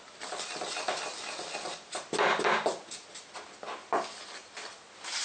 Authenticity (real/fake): real